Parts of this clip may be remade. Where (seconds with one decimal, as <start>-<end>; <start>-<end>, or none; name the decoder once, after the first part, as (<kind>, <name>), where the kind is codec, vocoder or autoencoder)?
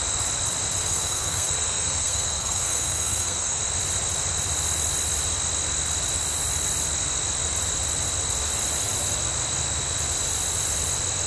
0.9-3.6 (codec, SNAC)